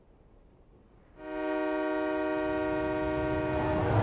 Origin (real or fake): real